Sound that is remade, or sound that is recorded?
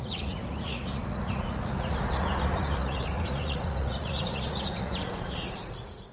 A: remade